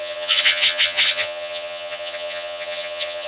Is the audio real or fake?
fake